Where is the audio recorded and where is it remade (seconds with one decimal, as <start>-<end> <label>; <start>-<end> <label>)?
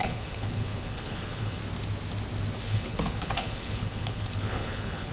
0.0-1.6 remade; 1.6-2.6 recorded; 2.6-5.1 remade